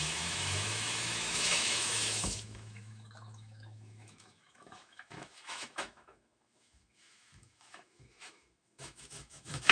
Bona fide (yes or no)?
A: no